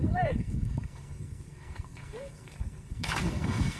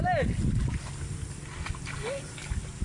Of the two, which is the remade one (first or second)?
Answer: first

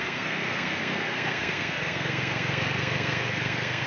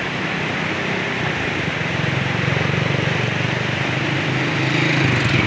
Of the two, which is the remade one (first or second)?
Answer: first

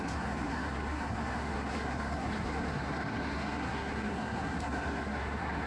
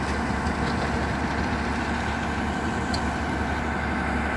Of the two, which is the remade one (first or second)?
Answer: first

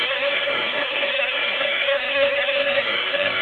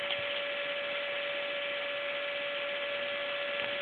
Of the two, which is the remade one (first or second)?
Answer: first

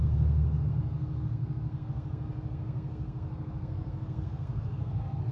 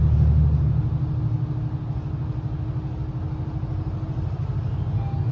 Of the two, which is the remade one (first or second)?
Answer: first